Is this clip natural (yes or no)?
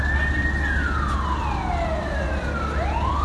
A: yes